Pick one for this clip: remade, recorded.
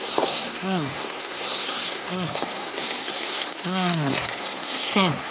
remade